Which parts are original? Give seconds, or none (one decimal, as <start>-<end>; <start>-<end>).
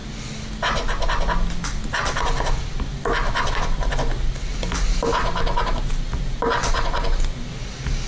0.0-8.1